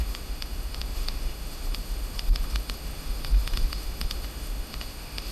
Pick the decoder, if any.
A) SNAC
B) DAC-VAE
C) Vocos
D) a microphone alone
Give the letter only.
B